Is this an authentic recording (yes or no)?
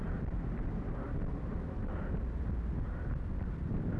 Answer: no